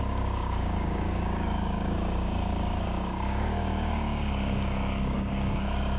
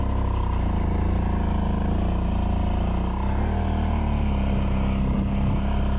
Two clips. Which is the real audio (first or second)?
second